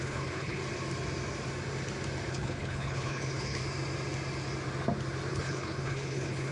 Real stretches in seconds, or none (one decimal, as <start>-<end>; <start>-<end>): 0.6-2.3; 3.6-5.3